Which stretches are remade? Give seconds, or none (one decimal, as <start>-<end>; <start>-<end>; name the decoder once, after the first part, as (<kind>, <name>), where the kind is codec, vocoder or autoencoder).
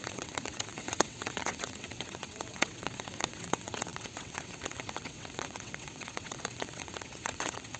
0.0-7.8 (vocoder, WaveNeXt)